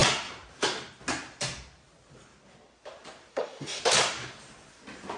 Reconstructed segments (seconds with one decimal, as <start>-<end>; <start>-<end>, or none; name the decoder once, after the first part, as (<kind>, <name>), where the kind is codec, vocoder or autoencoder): 3.3-3.8 (codec, SNAC)